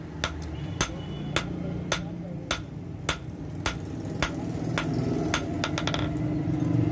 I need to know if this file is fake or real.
real